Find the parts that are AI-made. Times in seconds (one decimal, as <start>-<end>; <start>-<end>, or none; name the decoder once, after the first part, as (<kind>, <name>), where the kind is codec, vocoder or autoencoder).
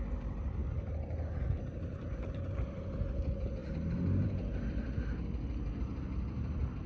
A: none